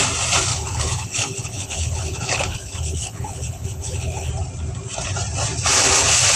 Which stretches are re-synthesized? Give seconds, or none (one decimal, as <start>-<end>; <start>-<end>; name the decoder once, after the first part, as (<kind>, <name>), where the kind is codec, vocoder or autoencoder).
0.5-4.3 (codec, HILCodec)